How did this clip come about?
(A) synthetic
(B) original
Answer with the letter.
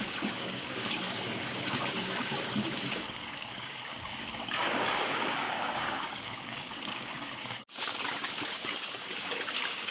A